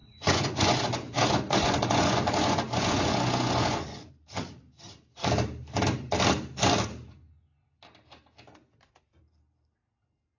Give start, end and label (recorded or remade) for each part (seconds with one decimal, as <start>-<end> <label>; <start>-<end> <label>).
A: 0.0-4.1 remade; 4.1-10.4 recorded